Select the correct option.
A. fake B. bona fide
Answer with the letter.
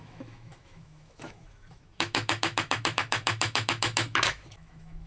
A